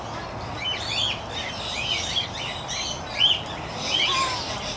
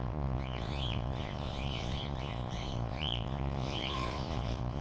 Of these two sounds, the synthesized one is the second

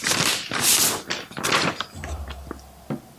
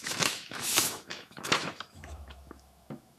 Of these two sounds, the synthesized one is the second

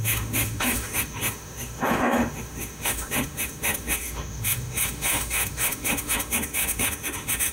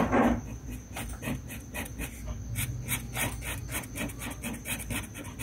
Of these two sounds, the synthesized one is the first